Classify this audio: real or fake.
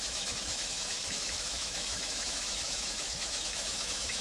fake